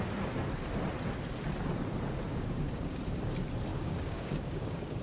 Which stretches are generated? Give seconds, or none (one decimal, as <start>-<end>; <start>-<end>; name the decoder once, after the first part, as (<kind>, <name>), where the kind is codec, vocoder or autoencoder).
2.3-3.0 (codec, DAC); 3.7-5.0